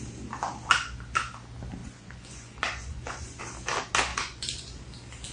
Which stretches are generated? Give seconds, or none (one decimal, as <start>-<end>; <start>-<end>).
1.8-3.4; 4.1-4.8